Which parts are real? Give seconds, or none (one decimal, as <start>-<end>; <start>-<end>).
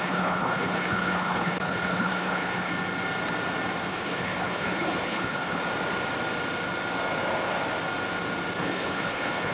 2.7-3.9; 5.6-8.6